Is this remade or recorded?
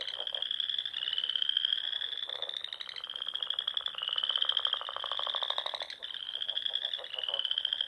recorded